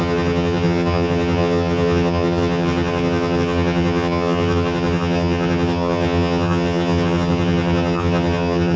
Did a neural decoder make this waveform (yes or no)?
yes